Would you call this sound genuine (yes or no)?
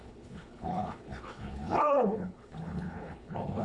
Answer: no